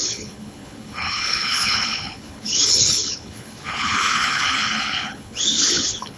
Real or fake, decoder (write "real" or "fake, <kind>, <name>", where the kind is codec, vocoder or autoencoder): fake, codec, HILCodec